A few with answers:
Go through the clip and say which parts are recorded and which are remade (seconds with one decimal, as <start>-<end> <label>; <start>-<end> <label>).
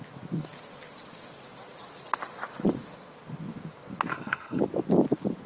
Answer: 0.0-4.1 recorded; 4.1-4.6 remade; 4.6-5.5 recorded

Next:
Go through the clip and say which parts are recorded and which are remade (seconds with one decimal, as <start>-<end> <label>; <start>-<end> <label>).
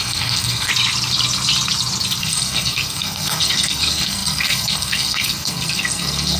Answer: 0.0-0.7 remade; 0.7-2.2 recorded; 2.2-6.4 remade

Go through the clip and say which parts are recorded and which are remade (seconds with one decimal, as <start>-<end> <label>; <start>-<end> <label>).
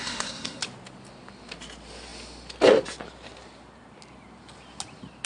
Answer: 0.0-0.6 remade; 0.6-5.3 recorded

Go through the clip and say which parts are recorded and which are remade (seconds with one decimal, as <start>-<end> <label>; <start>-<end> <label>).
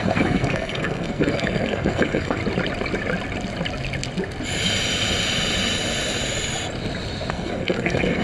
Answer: 0.0-2.4 remade; 2.4-7.3 recorded; 7.3-8.2 remade